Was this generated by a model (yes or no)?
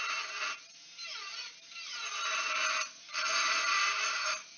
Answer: no